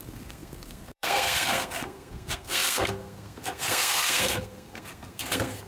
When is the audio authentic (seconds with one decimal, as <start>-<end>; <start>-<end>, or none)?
none